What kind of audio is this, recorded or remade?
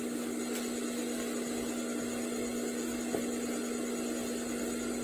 recorded